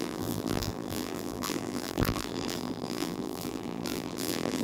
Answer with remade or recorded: remade